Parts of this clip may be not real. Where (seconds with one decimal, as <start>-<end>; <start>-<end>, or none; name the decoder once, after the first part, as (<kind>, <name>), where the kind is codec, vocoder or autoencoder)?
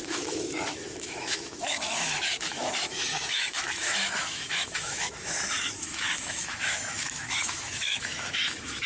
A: 0.0-8.9 (autoencoder, DAC-VAE)